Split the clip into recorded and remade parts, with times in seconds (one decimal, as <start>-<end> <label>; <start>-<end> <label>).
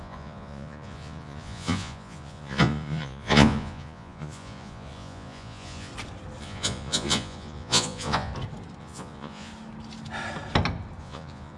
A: 0.0-5.9 remade; 5.9-6.4 recorded; 6.4-8.3 remade; 8.3-8.8 recorded; 8.8-9.5 remade; 9.5-11.0 recorded; 11.0-11.6 remade